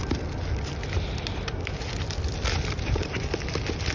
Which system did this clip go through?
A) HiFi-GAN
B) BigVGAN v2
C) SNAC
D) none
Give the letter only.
D